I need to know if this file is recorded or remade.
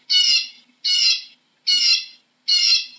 recorded